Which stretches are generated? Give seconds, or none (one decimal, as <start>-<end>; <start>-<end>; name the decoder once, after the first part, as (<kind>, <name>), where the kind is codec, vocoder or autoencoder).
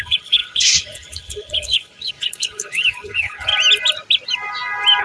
0.0-3.5 (codec, HILCodec)